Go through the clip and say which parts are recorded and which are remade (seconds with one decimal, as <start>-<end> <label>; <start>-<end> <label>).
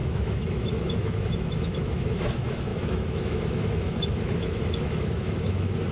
0.0-5.9 remade